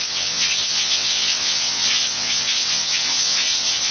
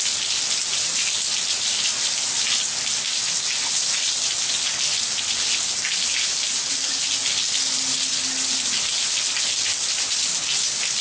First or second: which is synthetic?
first